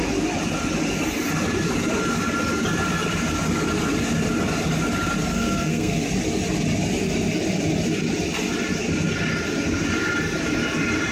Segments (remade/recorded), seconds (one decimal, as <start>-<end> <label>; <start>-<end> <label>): 0.0-5.3 recorded; 5.3-6.0 remade; 6.0-11.1 recorded